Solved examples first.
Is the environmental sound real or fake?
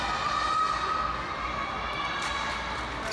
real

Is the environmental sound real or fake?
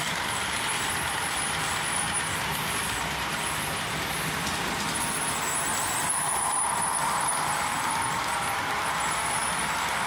real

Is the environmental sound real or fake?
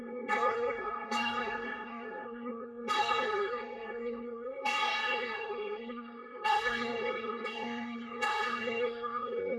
fake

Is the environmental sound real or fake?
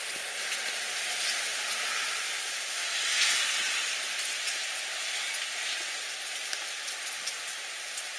real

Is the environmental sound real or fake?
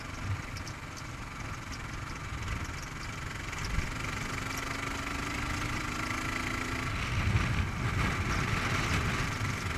real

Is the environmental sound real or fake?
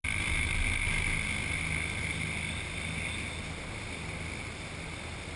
real